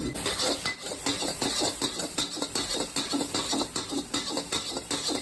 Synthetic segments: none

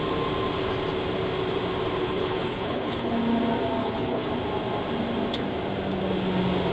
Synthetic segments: 2.0-3.1 (codec, HILCodec); 3.8-4.3